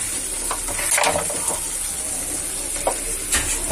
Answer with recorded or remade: recorded